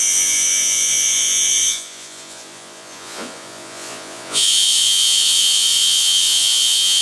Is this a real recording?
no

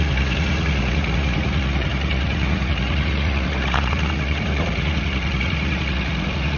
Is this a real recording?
no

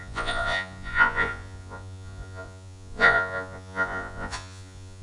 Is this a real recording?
no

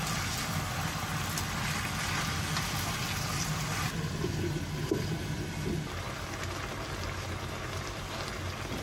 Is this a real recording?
yes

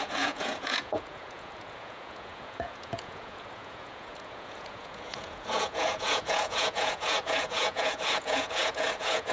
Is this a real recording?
no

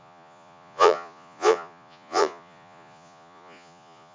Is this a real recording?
no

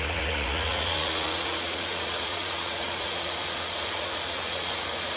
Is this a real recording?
no